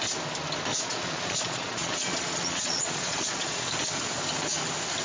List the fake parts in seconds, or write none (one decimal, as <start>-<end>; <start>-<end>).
0.7-3.7